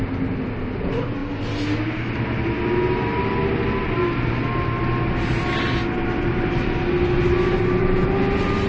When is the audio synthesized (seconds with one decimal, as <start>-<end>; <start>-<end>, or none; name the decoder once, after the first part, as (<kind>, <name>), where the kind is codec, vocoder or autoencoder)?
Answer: none